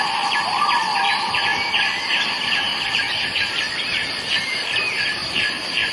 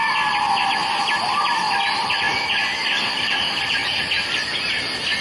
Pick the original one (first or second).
second